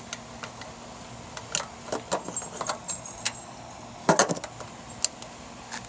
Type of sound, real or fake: real